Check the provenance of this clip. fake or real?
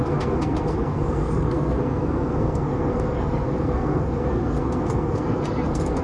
fake